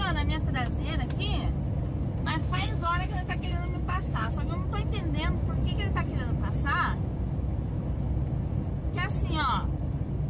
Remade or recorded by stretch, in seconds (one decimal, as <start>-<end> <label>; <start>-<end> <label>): 0.0-2.4 recorded; 2.4-4.3 remade; 4.3-10.3 recorded